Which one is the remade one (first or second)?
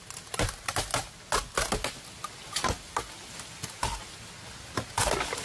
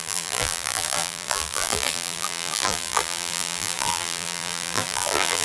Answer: second